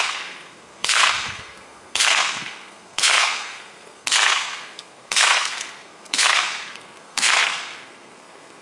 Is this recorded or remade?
remade